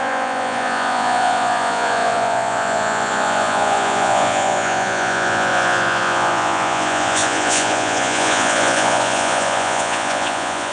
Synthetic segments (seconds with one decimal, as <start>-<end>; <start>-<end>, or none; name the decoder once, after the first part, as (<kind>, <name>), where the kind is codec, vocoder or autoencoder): 0.0-10.7 (vocoder, Vocos)